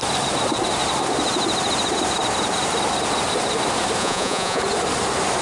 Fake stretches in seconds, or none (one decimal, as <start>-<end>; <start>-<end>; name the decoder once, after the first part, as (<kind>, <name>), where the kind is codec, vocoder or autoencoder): 4.0-4.6 (vocoder, Vocos)